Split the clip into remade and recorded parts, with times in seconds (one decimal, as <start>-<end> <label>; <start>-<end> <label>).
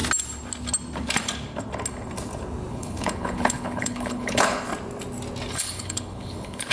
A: 0.0-2.7 recorded; 2.7-4.7 remade; 4.7-5.5 recorded; 5.5-6.7 remade